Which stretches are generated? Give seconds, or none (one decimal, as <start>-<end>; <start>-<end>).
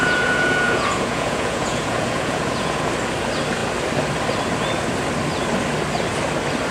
0.0-2.9